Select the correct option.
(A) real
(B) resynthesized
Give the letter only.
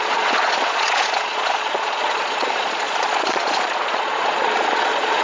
B